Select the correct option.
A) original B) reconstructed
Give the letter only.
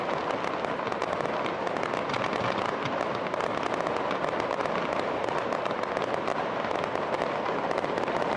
A